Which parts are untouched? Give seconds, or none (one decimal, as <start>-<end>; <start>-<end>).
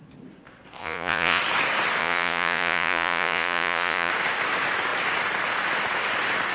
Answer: 0.0-0.8; 1.4-2.0; 4.1-6.5